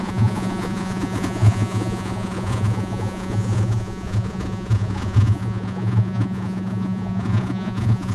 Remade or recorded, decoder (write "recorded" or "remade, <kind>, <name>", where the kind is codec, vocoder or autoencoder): remade, vocoder, Vocos